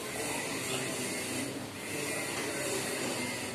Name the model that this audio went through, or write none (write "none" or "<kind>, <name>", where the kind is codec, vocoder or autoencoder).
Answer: none